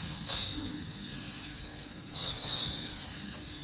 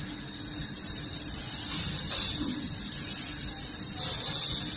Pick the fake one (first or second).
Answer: first